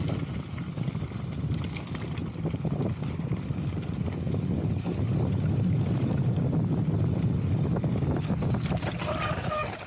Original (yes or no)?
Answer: yes